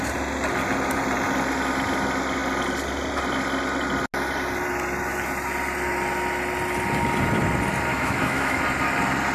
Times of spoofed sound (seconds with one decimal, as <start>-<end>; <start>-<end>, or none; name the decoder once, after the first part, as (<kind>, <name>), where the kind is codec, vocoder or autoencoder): 7.9-8.6 (autoencoder, DAC-VAE)